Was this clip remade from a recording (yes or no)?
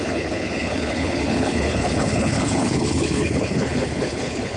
yes